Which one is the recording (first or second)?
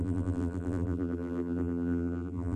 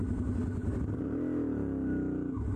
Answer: second